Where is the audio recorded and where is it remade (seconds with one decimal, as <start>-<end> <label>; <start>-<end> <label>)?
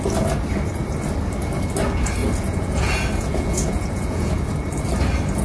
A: 0.0-2.2 recorded; 2.2-4.5 remade; 4.5-5.4 recorded